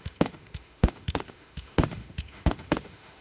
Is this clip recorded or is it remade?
remade